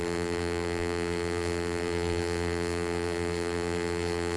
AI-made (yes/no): yes